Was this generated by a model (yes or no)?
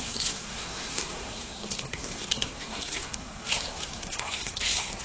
yes